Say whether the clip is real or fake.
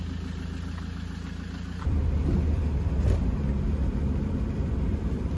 real